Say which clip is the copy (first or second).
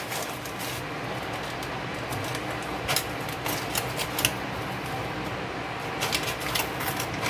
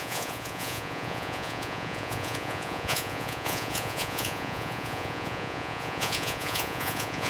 second